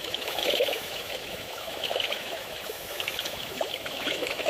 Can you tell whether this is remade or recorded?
remade